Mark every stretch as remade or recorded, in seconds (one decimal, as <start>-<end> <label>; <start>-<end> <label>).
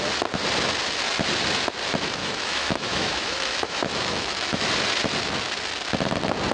0.0-2.2 recorded; 2.2-4.7 remade; 4.7-6.5 recorded